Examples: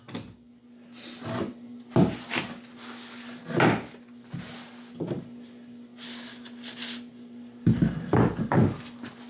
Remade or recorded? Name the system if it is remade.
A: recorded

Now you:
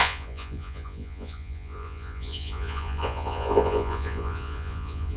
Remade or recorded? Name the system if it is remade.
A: remade, vocoder, Vocos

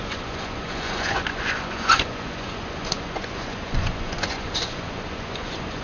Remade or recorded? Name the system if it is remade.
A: remade, vocoder, Vocos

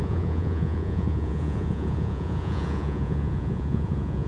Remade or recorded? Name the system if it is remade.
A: remade, vocoder, Vocos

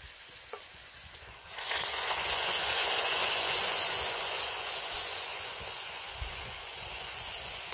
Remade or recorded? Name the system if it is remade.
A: remade, vocoder, Vocos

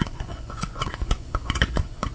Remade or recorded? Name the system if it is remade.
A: remade, vocoder, Vocos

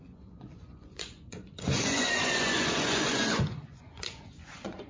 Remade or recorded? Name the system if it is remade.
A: remade, vocoder, Vocos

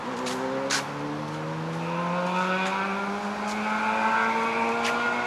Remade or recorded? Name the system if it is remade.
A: recorded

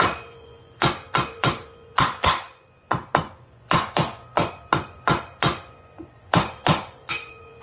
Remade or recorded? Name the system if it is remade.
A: remade, vocoder, Vocos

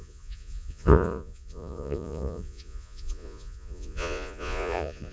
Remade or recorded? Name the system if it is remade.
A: remade, vocoder, Vocos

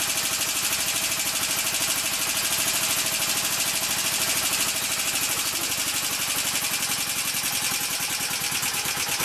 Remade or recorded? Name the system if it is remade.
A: recorded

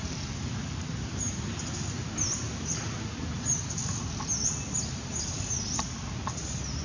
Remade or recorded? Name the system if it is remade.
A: recorded